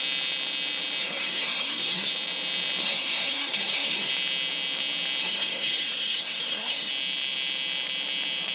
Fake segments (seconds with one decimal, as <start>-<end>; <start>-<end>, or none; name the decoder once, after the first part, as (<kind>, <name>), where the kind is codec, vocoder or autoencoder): 1.0-2.1 (codec, SNAC); 2.8-4.1; 5.2-6.9